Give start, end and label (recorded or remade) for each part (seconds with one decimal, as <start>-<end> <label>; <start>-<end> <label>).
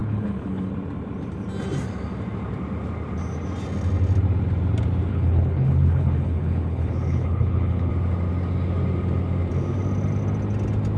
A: 0.0-0.7 remade; 0.7-5.1 recorded; 5.1-7.9 remade; 7.9-11.0 recorded